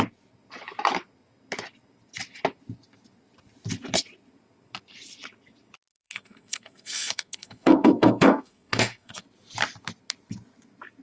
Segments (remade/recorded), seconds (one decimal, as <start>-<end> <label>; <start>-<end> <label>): 0.0-5.9 recorded; 5.9-9.2 remade; 9.2-11.0 recorded